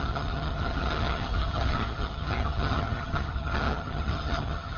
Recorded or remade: remade